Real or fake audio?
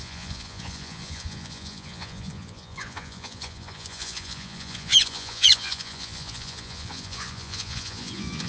fake